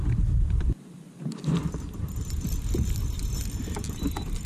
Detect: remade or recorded remade